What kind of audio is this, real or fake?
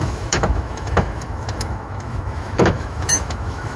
fake